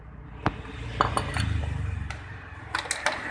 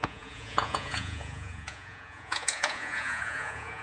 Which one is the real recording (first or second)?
first